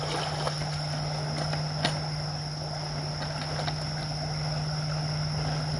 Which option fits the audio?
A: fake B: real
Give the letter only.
B